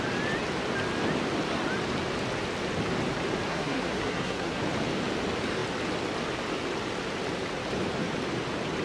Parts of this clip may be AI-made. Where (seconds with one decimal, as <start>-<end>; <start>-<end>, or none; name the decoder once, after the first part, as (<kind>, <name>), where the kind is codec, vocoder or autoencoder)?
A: 3.5-4.6 (codec, SNAC)